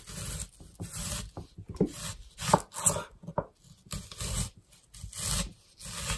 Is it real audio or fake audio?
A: real